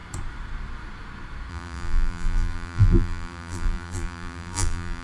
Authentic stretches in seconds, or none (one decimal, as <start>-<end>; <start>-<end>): 0.0-1.5